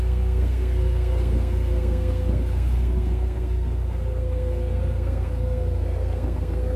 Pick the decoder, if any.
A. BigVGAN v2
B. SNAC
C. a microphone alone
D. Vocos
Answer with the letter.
B